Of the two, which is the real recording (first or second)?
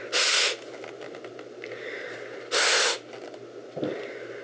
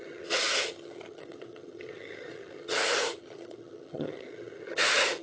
first